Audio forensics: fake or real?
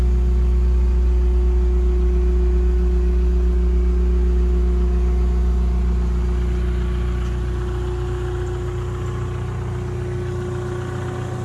real